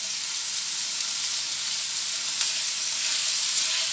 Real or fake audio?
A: real